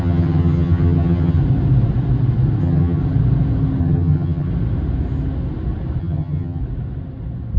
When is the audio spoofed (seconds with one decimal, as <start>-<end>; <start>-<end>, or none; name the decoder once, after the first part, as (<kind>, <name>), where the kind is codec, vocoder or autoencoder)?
0.0-1.4 (vocoder, HiFi-GAN); 2.6-3.0; 3.8-4.5; 6.0-6.6